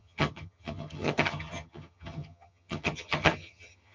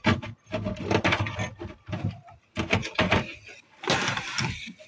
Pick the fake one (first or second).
first